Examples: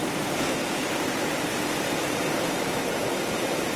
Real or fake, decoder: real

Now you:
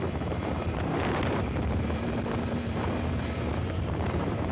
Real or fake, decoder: fake, vocoder, BigVGAN v2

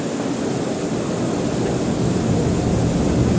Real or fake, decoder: real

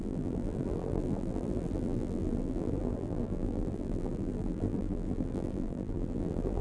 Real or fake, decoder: fake, vocoder, BigVGAN v2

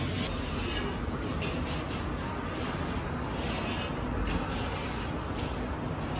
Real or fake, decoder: real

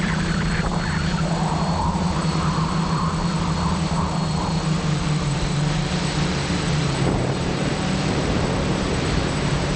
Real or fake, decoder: fake, vocoder, BigVGAN v2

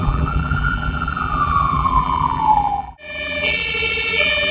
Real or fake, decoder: fake, vocoder, BigVGAN v2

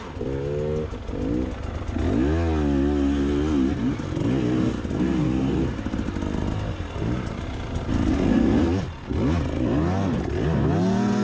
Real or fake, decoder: real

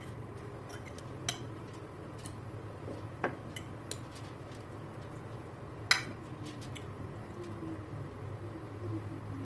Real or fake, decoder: real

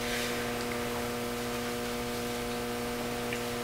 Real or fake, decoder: real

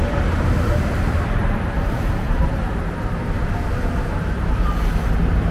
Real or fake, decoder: fake, vocoder, BigVGAN v2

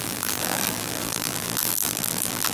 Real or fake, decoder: fake, vocoder, BigVGAN v2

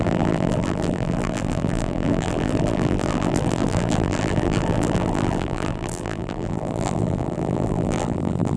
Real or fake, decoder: fake, vocoder, BigVGAN v2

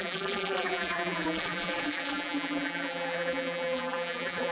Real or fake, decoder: fake, vocoder, BigVGAN v2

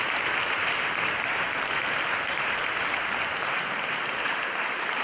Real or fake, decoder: fake, vocoder, BigVGAN v2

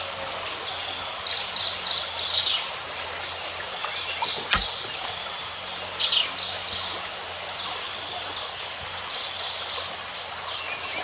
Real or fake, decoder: real